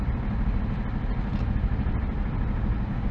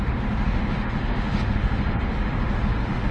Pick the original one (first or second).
first